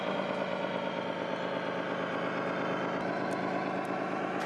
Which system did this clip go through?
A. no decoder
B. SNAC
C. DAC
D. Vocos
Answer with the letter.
A